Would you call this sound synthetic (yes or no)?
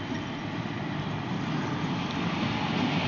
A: no